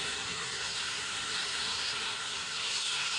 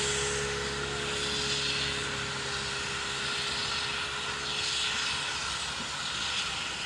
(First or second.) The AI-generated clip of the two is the first